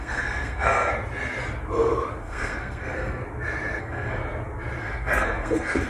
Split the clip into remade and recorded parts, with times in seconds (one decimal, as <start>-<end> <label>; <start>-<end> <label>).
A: 0.0-0.9 remade; 0.9-2.2 recorded; 2.2-3.2 remade; 3.2-3.8 recorded; 3.8-4.2 remade; 4.2-4.8 recorded; 4.8-5.9 remade